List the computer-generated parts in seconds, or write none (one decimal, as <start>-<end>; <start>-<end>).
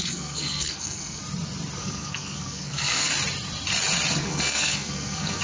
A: 0.0-1.2; 1.8-3.1; 4.1-5.4